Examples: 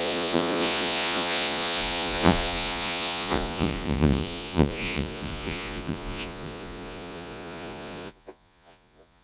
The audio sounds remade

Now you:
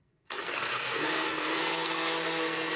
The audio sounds remade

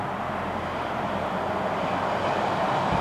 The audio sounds recorded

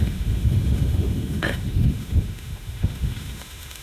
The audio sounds remade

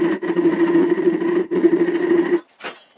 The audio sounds remade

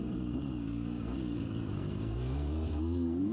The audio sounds remade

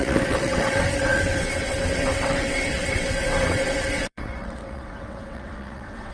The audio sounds remade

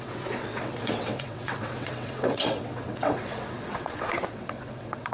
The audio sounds remade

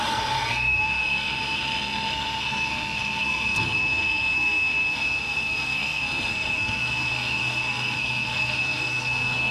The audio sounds remade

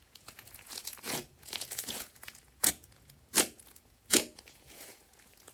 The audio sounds remade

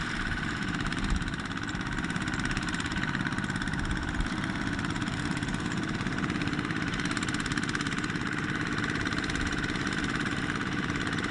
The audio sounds remade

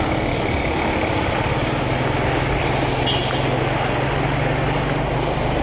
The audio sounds recorded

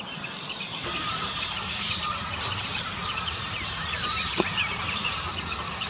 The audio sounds remade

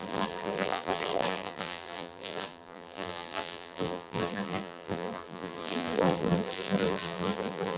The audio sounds remade